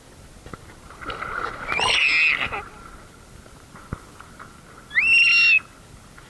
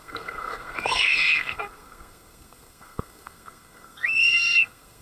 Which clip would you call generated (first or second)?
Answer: second